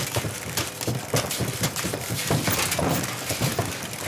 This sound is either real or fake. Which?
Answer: real